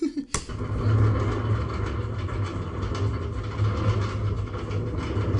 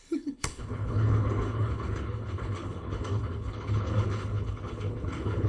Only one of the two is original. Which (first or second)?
first